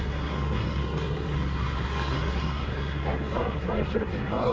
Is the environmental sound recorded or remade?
remade